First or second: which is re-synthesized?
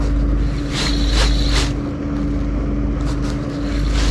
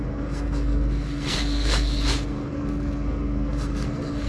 second